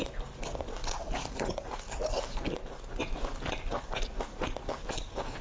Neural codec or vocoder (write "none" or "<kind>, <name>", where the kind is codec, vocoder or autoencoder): none